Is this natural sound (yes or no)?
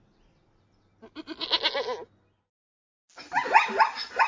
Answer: yes